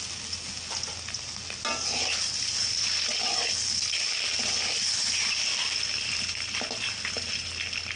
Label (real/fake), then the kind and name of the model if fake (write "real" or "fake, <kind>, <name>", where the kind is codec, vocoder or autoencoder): real